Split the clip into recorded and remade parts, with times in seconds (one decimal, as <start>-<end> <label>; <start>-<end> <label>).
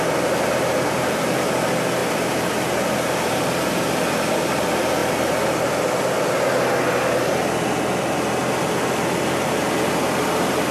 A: 0.0-10.7 recorded